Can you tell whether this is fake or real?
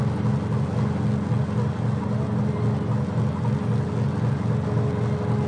real